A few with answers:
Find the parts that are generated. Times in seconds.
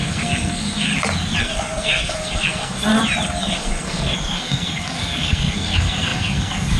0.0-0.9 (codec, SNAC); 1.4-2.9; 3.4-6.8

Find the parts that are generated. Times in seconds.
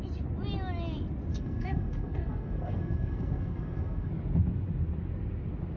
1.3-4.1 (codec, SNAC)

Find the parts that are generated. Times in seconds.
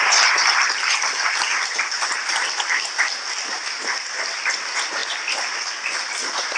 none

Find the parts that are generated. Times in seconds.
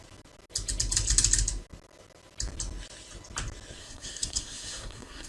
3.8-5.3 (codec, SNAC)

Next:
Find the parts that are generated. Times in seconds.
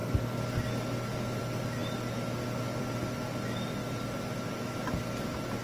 none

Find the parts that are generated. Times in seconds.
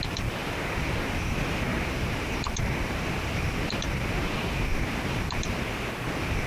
0.4-1.1 (vocoder, BigVGAN v2); 1.7-5.6